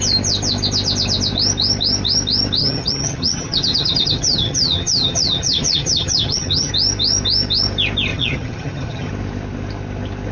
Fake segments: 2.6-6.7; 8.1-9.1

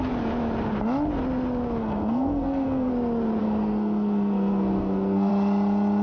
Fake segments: 1.8-2.9; 3.4-5.3

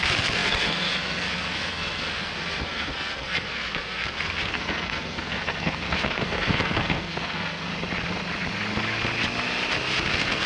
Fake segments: 0.0-7.7; 10.1-10.5

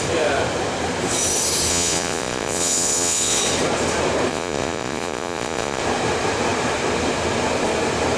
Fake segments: 1.7-3.4; 4.3-5.8

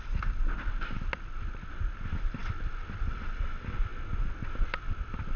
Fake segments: none

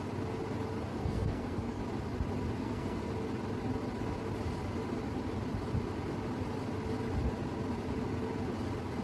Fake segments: 0.9-1.8; 2.6-3.1

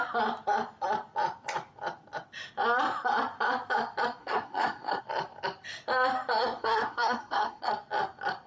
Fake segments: 4.2-5.0; 6.4-7.7

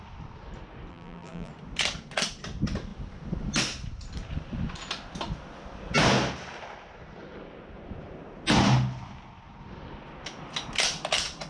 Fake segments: 0.9-1.5